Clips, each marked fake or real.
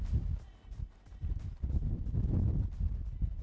real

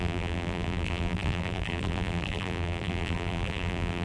fake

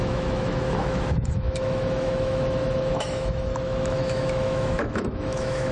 fake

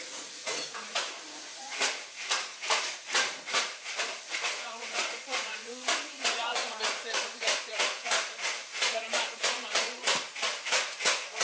fake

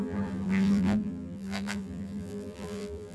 fake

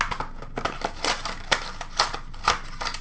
real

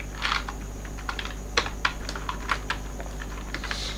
real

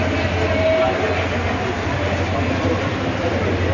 real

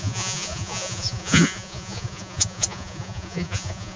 fake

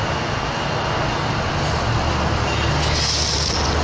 real